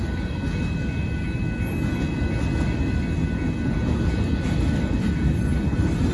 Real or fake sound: real